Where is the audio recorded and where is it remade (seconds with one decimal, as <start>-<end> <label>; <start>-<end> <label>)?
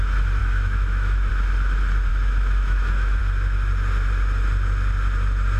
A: 0.0-0.4 recorded; 0.4-1.3 remade; 1.3-2.1 recorded; 2.1-3.2 remade; 3.2-5.6 recorded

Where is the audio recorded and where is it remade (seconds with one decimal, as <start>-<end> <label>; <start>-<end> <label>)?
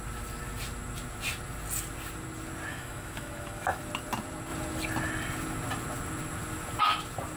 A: 0.0-2.7 recorded; 2.7-3.8 remade; 3.8-7.4 recorded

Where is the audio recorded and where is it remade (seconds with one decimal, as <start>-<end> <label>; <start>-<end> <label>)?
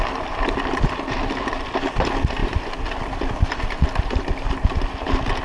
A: 0.0-5.4 recorded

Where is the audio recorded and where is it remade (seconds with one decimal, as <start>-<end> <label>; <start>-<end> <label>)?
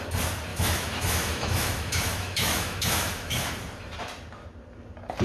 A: 0.0-0.5 recorded; 0.5-3.5 remade; 3.5-5.2 recorded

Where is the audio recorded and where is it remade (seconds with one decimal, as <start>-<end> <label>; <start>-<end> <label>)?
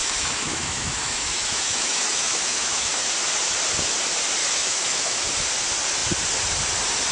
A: 0.0-3.1 remade; 3.1-4.4 recorded; 4.4-5.3 remade; 5.3-7.1 recorded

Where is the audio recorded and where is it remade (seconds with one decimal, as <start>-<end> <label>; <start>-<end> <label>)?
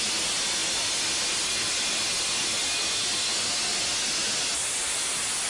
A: 0.0-5.5 recorded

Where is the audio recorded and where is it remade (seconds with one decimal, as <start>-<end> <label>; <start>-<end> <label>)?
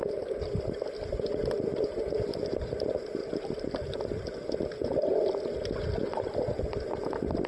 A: 0.0-7.5 recorded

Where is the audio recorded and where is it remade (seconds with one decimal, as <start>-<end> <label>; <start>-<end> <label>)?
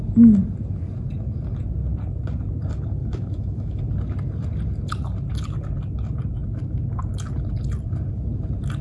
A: 0.0-3.0 recorded; 3.0-3.8 remade; 3.8-8.8 recorded